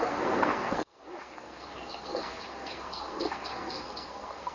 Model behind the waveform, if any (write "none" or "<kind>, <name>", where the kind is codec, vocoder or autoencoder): codec, SNAC